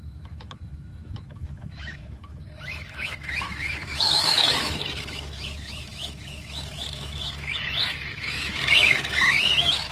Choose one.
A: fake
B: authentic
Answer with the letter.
A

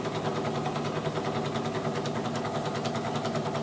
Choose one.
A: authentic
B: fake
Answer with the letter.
A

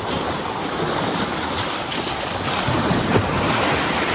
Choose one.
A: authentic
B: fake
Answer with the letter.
B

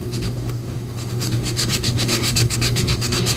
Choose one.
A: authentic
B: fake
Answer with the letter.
B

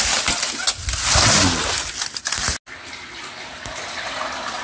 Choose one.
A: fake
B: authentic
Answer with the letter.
B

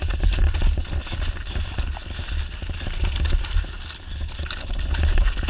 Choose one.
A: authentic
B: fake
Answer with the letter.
A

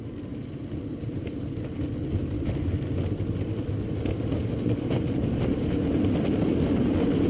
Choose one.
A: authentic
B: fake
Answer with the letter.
A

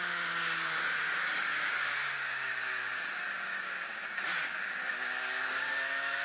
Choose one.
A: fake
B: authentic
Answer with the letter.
A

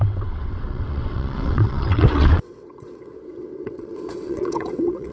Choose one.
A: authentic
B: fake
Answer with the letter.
B